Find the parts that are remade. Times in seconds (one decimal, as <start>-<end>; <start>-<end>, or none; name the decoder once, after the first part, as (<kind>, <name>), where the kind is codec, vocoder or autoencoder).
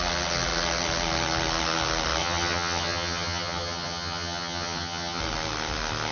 2.2-5.2 (vocoder, HiFi-GAN)